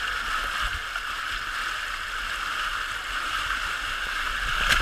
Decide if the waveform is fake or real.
real